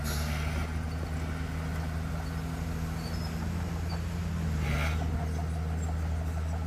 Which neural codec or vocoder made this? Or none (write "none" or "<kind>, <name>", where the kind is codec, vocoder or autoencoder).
none